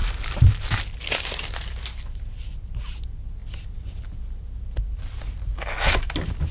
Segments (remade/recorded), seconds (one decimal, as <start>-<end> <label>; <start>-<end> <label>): 0.0-0.8 remade; 0.8-6.5 recorded